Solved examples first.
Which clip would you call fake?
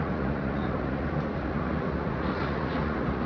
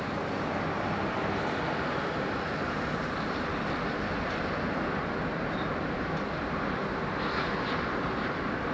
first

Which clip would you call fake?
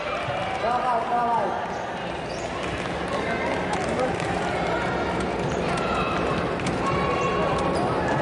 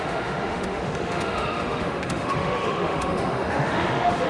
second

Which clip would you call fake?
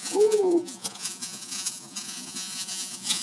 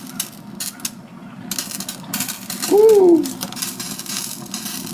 first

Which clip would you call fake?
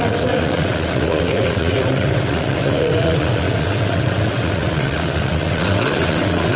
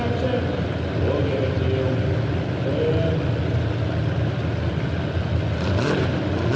first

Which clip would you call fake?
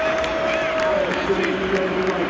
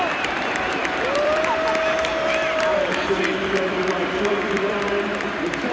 second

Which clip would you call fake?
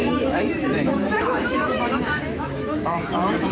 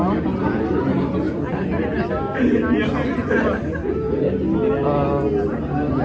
first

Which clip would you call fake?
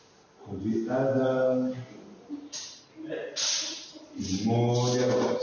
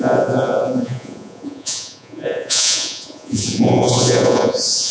second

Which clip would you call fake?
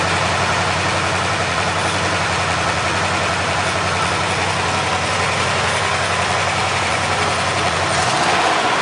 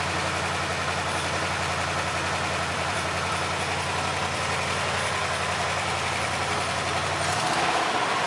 first